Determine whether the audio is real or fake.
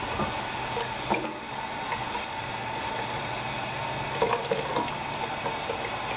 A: real